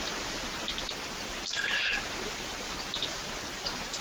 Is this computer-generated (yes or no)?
no